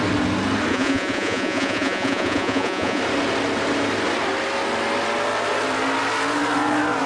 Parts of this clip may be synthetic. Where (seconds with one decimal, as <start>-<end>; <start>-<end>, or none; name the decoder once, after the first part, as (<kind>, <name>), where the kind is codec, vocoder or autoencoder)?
0.7-3.0 (vocoder, Vocos)